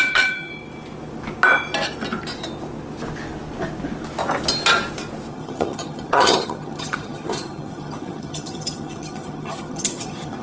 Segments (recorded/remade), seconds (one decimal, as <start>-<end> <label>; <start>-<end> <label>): 0.0-0.5 remade; 0.5-5.3 recorded; 5.3-10.4 remade